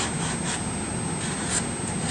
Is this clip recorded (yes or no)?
yes